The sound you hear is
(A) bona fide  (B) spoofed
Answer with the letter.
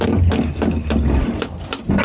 A